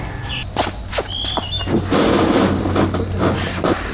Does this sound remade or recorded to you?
recorded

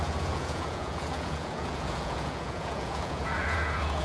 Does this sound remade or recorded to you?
remade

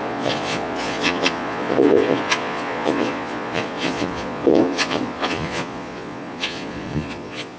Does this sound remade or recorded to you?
remade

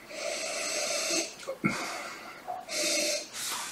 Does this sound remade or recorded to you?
remade